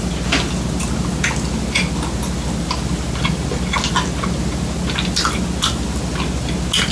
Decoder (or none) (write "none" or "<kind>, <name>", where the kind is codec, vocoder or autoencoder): none